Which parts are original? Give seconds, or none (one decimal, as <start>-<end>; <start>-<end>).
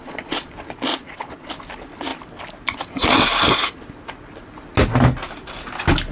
0.5-0.9; 1.5-6.1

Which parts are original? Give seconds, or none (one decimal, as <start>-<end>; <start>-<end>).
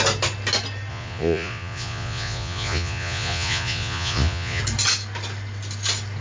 0.0-0.9; 4.6-6.2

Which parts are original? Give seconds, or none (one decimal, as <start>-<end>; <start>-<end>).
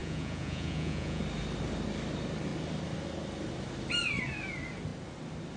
1.2-5.6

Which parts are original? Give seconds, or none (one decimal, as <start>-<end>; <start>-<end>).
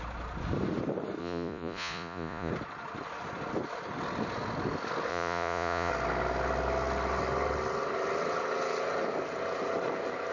0.0-1.2; 2.5-5.1; 5.9-10.3